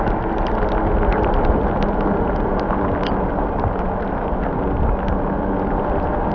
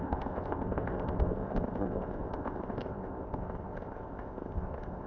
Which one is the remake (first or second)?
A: second